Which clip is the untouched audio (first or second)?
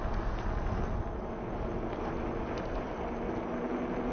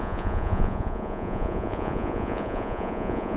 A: first